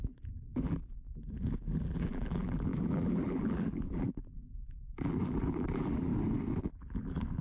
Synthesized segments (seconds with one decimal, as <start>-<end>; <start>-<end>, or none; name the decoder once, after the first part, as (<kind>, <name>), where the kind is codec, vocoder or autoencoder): 0.0-6.1 (vocoder, BigVGAN v2); 6.6-7.4